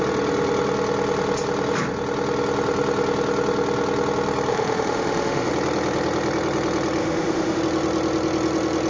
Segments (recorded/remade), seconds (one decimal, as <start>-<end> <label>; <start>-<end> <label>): 0.0-4.5 recorded; 4.5-5.5 remade; 5.5-7.0 recorded; 7.0-7.6 remade; 7.6-8.9 recorded